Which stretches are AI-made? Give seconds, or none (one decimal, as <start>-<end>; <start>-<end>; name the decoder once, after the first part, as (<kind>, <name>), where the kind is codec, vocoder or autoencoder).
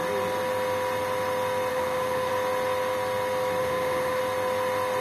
1.7-2.3 (autoencoder, DAC-VAE); 3.6-4.2